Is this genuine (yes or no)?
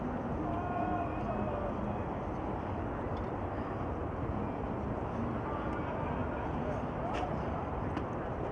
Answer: yes